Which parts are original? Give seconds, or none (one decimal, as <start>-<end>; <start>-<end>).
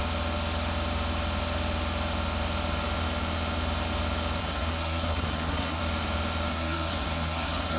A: 0.0-4.4; 5.8-6.5